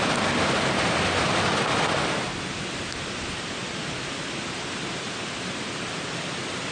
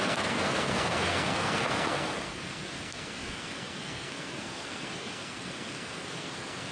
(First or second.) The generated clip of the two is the second